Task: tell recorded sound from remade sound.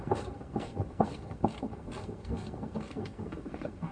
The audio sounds remade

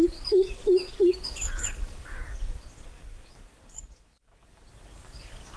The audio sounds remade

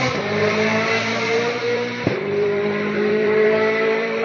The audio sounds remade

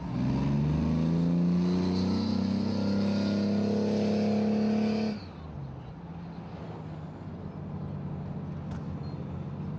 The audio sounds recorded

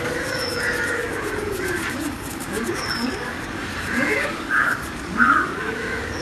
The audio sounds remade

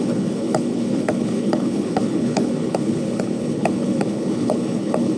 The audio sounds remade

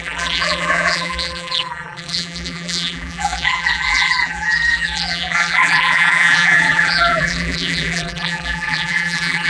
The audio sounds remade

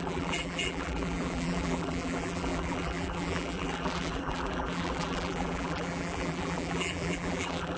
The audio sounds remade